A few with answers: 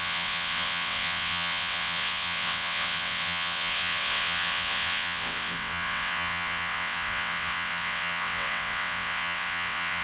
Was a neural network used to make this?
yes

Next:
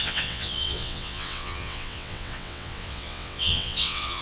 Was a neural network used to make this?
yes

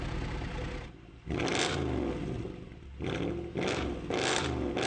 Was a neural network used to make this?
no